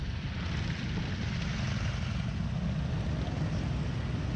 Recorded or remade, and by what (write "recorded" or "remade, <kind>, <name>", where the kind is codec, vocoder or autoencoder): recorded